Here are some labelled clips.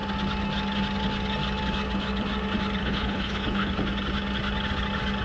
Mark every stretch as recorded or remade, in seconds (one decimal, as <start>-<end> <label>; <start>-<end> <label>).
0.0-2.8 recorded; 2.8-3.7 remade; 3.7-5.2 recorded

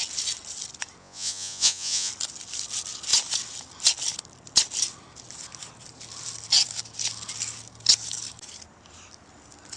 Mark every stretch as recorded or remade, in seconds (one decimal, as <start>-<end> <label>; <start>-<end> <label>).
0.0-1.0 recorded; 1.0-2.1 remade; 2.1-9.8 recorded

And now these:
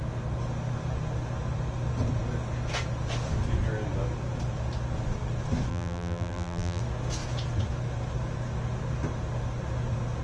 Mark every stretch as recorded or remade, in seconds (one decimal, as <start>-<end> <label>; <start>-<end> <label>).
0.0-5.7 recorded; 5.7-6.8 remade; 6.8-10.2 recorded

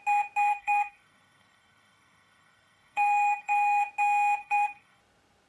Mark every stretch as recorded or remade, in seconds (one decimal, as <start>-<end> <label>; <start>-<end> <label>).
0.0-0.5 recorded; 0.5-3.8 remade; 3.8-4.4 recorded; 4.4-5.0 remade; 5.0-5.5 recorded